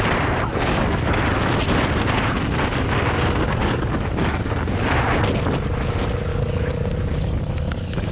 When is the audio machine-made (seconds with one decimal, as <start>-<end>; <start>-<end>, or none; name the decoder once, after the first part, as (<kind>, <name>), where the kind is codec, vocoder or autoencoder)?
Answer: 0.5-1.2 (codec, DAC); 3.6-4.7; 6.3-8.1